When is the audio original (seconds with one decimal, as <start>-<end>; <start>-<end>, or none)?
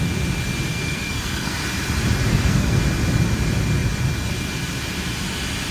0.0-0.7; 1.6-2.3; 2.8-5.7